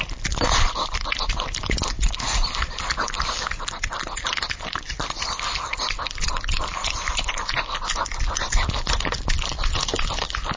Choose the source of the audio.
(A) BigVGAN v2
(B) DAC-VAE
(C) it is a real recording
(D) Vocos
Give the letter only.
A